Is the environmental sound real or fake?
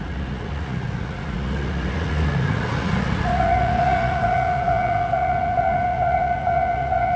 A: fake